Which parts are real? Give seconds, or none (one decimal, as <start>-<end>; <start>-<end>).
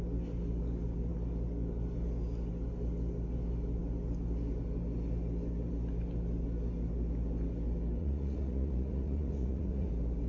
0.0-8.0; 9.9-10.3